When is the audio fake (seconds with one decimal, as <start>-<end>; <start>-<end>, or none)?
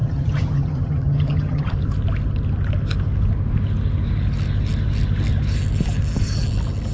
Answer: 0.0-1.7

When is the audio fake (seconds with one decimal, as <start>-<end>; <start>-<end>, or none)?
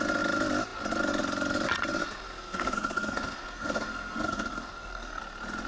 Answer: 2.0-5.2